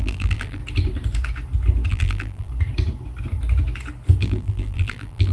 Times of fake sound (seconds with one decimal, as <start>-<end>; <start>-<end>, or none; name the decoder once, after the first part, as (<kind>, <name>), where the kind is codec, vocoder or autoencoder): 0.0-0.6 (vocoder, BigVGAN v2); 1.9-2.5; 4.2-5.3